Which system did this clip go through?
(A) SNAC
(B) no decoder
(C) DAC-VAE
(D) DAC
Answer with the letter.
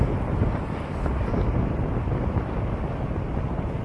B